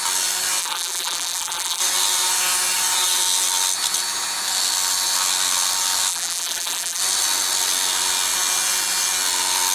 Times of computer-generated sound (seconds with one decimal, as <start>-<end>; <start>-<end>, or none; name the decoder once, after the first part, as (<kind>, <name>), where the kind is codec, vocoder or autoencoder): 0.6-1.8 (vocoder, BigVGAN v2); 6.1-7.0